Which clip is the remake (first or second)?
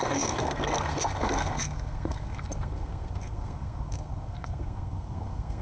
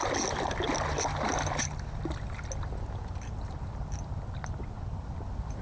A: first